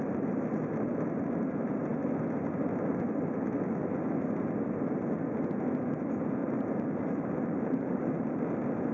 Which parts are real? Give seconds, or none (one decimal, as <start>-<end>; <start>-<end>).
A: 0.0-6.4; 8.5-8.9

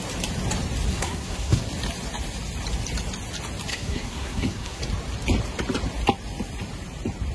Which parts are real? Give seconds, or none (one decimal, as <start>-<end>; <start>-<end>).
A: 0.0-0.9; 1.6-3.7; 4.8-7.3

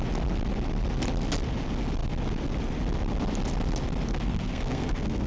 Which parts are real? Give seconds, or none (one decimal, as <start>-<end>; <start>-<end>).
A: 0.0-4.1

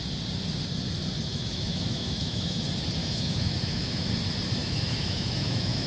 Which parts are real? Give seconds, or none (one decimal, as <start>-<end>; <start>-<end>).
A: 0.0-1.3; 2.6-3.0; 4.1-4.6

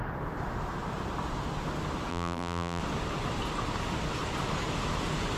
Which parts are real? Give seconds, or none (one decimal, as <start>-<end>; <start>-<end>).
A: 0.0-2.1; 2.8-5.4